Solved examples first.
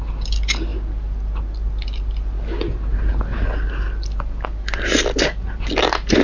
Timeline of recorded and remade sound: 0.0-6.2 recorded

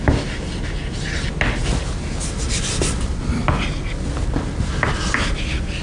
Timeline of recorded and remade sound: 0.0-5.8 recorded

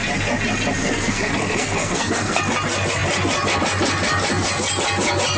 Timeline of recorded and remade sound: 0.0-0.8 recorded; 0.8-2.4 remade; 2.4-5.4 recorded

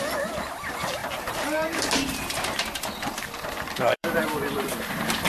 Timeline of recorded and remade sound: 0.0-1.0 recorded; 1.0-4.2 remade; 4.2-5.3 recorded

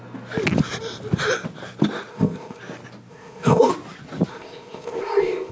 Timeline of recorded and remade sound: 0.0-2.1 recorded; 2.1-2.6 remade; 2.6-3.1 recorded; 3.1-3.7 remade; 3.7-4.3 recorded; 4.3-5.5 remade

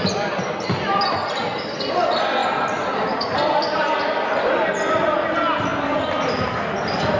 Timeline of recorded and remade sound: 0.0-1.2 recorded; 1.2-1.9 remade; 1.9-2.4 recorded; 2.4-4.0 remade; 4.0-7.2 recorded

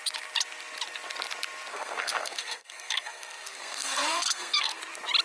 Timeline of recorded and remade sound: 0.0-1.7 recorded; 1.7-4.8 remade; 4.8-5.2 recorded

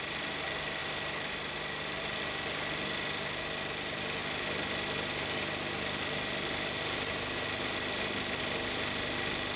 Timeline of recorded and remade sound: 0.0-0.8 recorded; 0.8-2.2 remade; 2.2-4.2 recorded; 4.2-8.4 remade; 8.4-9.6 recorded